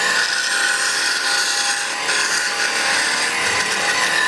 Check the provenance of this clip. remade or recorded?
recorded